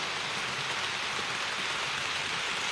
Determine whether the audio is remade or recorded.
recorded